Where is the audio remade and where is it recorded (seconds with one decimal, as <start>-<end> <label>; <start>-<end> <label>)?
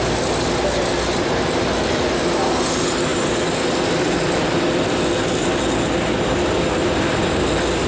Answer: 0.0-7.9 recorded